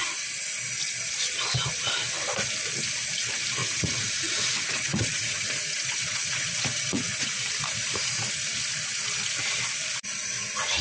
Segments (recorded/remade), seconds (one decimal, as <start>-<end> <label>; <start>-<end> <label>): 0.0-3.6 recorded; 3.6-7.5 remade; 7.5-10.8 recorded